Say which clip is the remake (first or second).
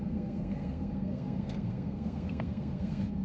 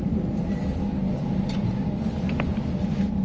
first